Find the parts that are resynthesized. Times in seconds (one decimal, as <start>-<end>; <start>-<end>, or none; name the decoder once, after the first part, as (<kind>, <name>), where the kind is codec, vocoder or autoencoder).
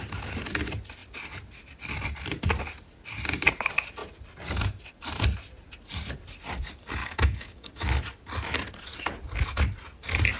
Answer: 7.0-7.7 (codec, DAC)